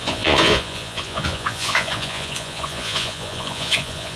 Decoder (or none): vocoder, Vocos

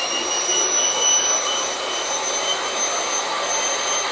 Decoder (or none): none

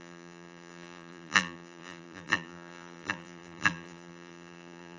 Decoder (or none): vocoder, BigVGAN v2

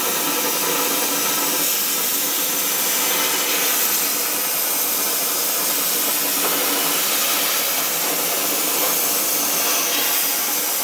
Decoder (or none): none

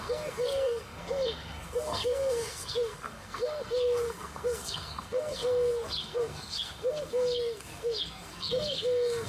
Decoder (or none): codec, SNAC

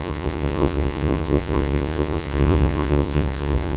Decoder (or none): vocoder, Vocos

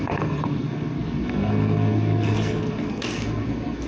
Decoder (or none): codec, SNAC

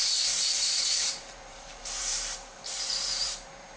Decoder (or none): vocoder, BigVGAN v2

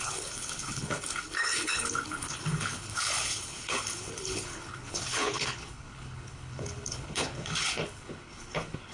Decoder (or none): codec, HILCodec